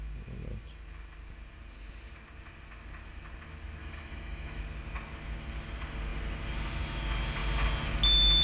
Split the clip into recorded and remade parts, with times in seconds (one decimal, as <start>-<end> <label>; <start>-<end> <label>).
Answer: 0.0-3.8 recorded; 3.8-4.6 remade; 4.6-8.4 recorded